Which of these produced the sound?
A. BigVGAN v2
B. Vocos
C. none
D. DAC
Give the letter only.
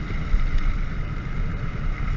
C